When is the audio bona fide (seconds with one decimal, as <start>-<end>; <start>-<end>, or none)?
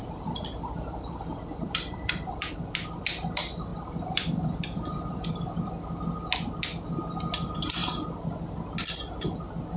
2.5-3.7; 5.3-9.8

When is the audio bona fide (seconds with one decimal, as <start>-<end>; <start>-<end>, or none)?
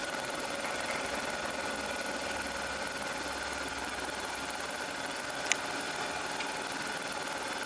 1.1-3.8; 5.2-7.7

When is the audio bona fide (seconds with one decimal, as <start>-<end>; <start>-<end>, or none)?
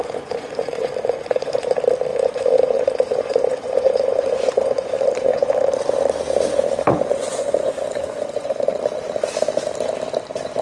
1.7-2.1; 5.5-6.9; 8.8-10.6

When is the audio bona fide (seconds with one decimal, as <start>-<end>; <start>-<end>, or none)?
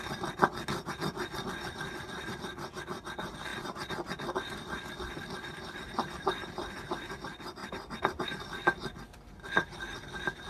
0.0-3.5; 6.1-7.6; 8.3-10.5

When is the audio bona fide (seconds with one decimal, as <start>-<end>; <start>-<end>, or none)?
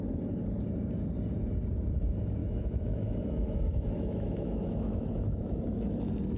0.0-2.4; 5.6-6.4